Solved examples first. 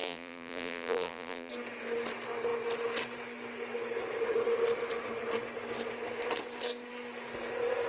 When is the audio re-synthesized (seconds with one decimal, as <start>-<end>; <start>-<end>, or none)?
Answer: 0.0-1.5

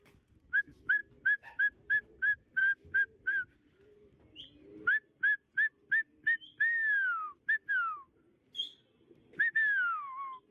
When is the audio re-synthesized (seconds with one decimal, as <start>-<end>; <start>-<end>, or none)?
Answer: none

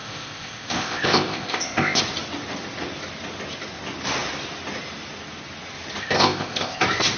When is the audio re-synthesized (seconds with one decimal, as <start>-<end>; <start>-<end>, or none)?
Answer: 0.0-2.0; 6.0-6.8

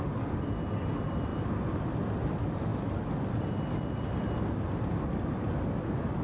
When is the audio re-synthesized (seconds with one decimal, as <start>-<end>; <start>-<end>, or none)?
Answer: 0.0-1.3; 2.2-6.2